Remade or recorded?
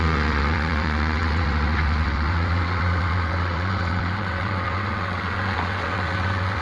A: remade